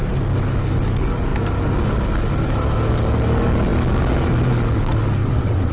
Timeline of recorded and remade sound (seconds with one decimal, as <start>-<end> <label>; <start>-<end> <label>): 0.0-5.2 recorded; 5.2-5.7 remade